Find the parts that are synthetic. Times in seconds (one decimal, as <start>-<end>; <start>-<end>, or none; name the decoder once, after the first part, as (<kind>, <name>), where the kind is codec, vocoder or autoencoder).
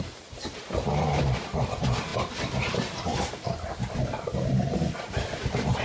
none